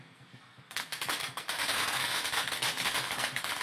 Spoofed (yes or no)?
yes